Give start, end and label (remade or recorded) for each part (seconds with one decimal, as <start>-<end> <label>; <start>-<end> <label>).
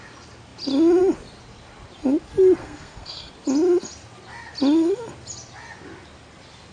0.0-2.6 recorded; 2.6-3.3 remade; 3.3-6.7 recorded